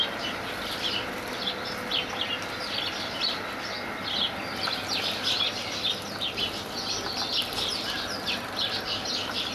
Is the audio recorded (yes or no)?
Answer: yes